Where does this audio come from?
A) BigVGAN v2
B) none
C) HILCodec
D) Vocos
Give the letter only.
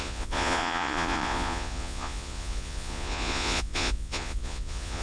D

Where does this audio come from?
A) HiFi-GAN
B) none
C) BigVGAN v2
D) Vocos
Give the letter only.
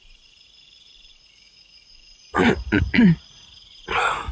D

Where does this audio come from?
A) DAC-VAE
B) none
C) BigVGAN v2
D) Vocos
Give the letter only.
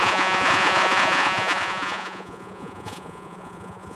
D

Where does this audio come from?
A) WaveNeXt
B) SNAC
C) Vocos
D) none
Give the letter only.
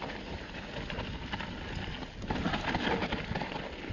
D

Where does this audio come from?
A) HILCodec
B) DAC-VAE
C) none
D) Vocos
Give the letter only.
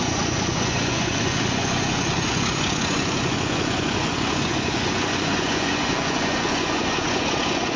D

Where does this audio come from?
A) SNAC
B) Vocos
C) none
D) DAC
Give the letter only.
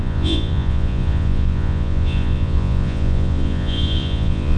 B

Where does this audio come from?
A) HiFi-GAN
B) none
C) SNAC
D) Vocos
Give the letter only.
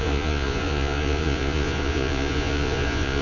D